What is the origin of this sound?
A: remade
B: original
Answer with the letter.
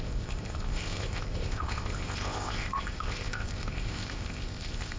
A